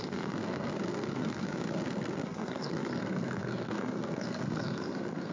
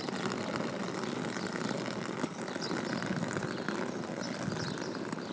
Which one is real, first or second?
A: second